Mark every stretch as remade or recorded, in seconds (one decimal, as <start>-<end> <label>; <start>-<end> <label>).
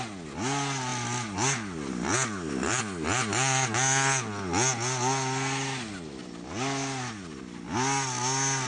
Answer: 0.0-0.9 recorded; 0.9-2.8 remade; 2.8-8.7 recorded